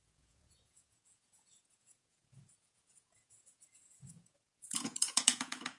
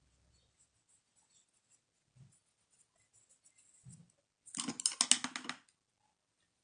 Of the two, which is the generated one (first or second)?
first